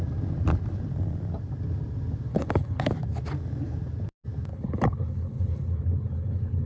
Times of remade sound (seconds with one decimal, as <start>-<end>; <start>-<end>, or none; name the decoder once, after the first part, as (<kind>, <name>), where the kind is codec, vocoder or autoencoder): 2.3-2.9 (codec, HILCodec); 4.5-6.7